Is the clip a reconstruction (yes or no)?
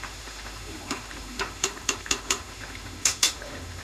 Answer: yes